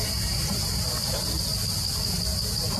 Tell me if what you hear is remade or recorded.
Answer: recorded